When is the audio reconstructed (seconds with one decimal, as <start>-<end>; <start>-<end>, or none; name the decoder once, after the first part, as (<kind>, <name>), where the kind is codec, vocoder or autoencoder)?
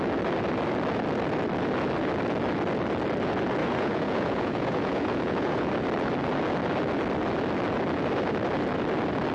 3.6-5.7 (vocoder, Vocos)